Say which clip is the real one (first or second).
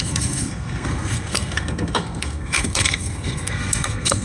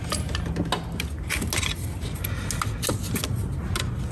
second